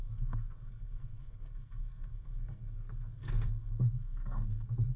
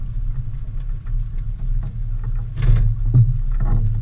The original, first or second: second